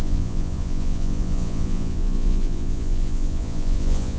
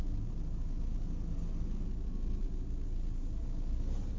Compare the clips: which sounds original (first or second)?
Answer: second